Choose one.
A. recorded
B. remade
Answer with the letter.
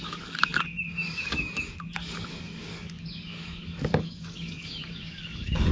B